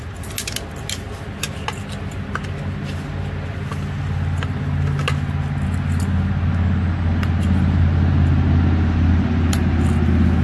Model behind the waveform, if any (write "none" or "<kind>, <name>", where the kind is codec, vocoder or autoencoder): none